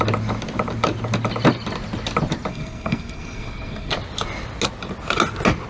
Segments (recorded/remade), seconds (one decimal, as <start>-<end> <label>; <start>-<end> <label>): 0.0-2.5 recorded; 2.5-3.9 remade; 3.9-5.7 recorded